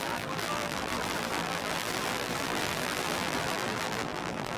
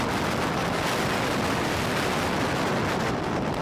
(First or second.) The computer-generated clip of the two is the first